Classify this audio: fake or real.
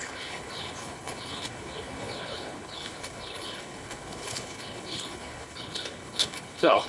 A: fake